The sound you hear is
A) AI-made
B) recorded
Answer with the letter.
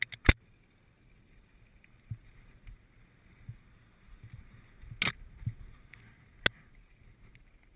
B